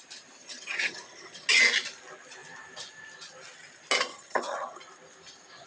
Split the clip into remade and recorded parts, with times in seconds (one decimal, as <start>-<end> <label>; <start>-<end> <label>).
0.0-0.4 recorded; 0.4-1.5 remade; 1.5-4.1 recorded; 4.1-4.8 remade; 4.8-5.7 recorded